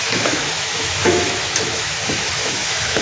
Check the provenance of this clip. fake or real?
fake